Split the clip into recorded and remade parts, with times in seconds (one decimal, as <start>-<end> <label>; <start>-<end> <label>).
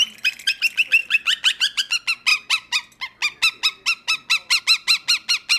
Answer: 0.0-1.0 recorded; 1.0-1.8 remade; 1.8-5.6 recorded